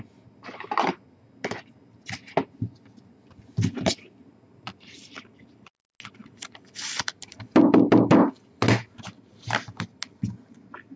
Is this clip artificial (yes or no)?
no